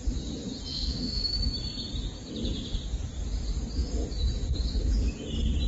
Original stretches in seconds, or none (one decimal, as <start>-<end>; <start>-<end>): 0.0-0.7; 1.4-5.7